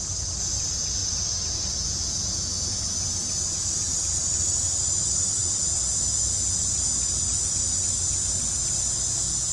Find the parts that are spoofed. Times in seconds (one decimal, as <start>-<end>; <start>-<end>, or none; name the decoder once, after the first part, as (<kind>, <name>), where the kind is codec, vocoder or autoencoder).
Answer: 1.0-3.9 (vocoder, Vocos)